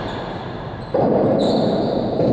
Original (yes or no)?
yes